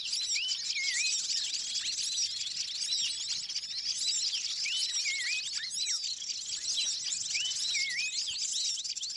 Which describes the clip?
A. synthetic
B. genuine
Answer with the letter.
B